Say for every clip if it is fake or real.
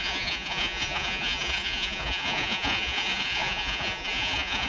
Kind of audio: fake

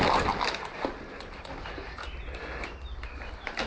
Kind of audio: real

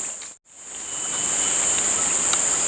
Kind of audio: real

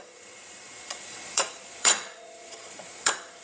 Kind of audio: fake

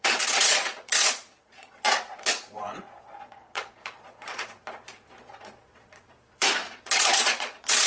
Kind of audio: fake